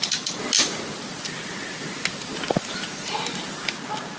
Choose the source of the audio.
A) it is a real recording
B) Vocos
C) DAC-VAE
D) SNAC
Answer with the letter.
A